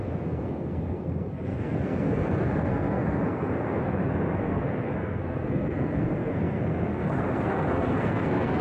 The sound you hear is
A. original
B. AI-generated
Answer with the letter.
B